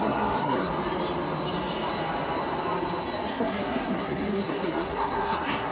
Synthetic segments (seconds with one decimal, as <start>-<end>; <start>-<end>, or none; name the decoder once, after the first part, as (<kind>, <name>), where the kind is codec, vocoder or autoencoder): 0.0-0.7 (codec, SNAC); 3.3-5.7